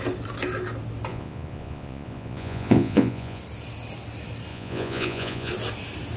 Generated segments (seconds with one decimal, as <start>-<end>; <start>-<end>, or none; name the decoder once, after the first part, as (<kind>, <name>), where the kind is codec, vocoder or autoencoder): 1.1-3.4 (vocoder, Vocos); 4.5-5.5